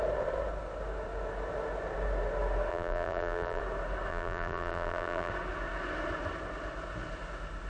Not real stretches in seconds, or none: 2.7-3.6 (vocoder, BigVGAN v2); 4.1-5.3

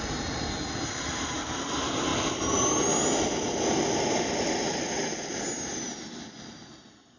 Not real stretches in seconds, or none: 0.0-2.1 (vocoder, BigVGAN v2); 6.4-7.2

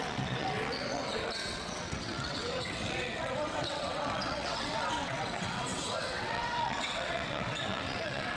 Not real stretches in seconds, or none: 0.0-8.4 (vocoder, WaveNeXt)

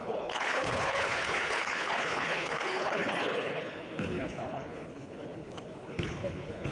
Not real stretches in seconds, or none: 0.0-6.7 (codec, HILCodec)